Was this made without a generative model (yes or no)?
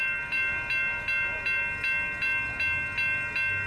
yes